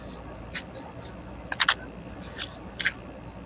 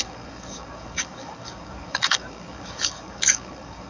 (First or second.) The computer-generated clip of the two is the second